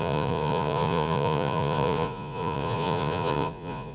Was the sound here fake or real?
fake